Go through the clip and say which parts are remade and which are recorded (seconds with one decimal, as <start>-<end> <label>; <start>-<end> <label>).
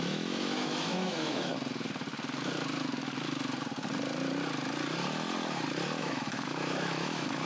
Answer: 0.0-1.5 remade; 1.5-6.0 recorded; 6.0-7.5 remade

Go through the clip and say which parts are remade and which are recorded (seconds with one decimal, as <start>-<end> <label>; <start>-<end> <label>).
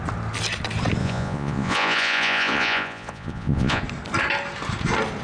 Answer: 0.0-1.0 recorded; 1.0-3.8 remade; 3.8-5.2 recorded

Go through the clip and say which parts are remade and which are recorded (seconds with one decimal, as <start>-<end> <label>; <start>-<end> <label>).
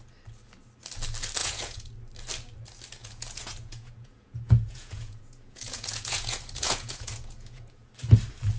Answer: 0.0-1.4 recorded; 1.4-1.9 remade; 1.9-3.0 recorded; 3.0-7.9 remade; 7.9-8.6 recorded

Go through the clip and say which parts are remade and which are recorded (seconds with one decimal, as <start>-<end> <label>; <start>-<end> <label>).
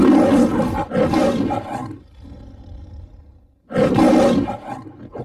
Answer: 0.0-5.2 recorded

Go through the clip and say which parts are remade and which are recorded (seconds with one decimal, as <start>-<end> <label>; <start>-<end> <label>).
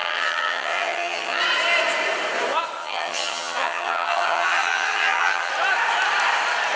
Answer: 0.0-1.4 remade; 1.4-2.8 recorded; 2.8-5.5 remade; 5.5-6.8 recorded